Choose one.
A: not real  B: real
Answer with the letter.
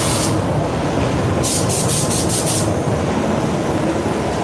B